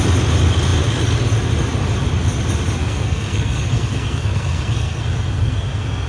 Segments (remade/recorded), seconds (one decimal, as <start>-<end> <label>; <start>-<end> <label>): 0.0-2.8 recorded; 2.8-6.1 remade